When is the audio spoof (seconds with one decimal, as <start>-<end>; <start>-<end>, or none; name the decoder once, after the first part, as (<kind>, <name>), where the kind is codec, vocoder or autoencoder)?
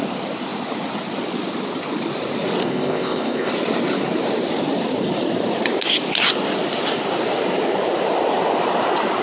2.6-3.5 (codec, ZipCodec)